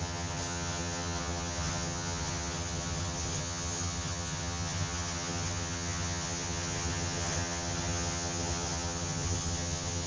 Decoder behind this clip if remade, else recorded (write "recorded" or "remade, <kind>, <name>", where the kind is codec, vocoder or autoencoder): remade, vocoder, HiFi-GAN